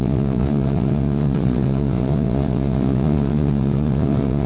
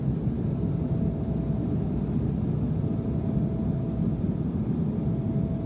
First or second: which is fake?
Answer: first